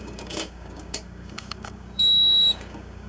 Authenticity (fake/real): fake